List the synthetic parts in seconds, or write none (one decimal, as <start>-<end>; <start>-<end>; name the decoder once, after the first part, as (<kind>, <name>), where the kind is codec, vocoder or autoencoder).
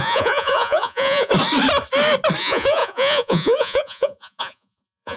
0.0-1.3 (vocoder, Vocos); 2.4-5.2